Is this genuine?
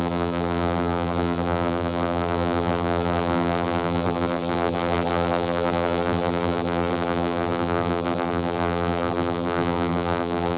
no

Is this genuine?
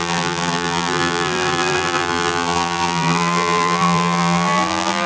no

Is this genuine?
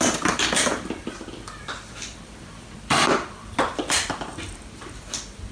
no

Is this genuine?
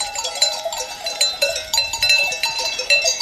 no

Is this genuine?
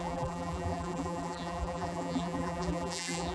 no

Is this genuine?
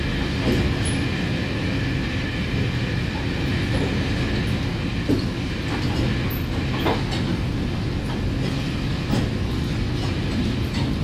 yes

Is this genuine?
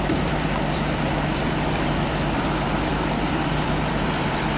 no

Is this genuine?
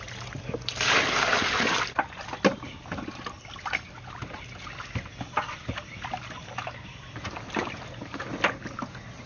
yes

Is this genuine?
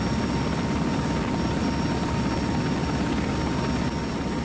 yes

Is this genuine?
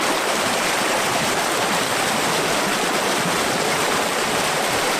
no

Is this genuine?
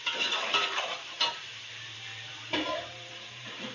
no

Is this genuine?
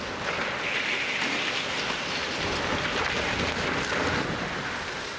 yes